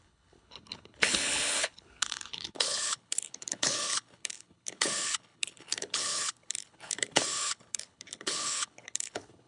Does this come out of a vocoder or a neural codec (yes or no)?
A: yes